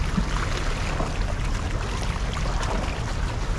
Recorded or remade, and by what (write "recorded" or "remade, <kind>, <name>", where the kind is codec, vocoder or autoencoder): recorded